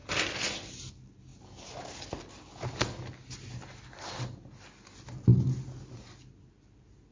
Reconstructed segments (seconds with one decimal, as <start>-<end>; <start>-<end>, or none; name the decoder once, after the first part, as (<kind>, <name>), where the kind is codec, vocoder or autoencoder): none